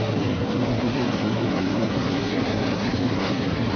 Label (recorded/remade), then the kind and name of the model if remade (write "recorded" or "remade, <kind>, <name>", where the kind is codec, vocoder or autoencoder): remade, codec, SNAC